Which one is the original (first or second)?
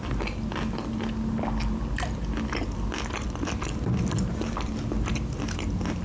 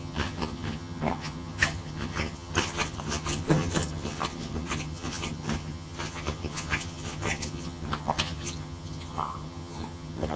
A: first